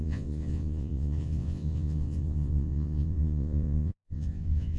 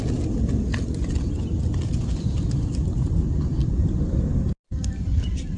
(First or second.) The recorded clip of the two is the second